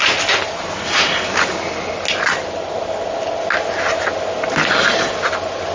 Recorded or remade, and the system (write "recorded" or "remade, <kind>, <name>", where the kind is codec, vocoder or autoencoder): recorded